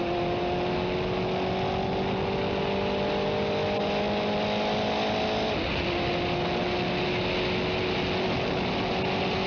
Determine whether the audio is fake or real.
real